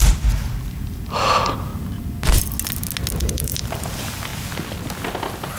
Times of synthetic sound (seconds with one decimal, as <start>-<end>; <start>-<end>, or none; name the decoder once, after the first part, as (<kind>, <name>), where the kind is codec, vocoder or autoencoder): 0.0-1.7 (vocoder, BigVGAN v2); 3.2-4.3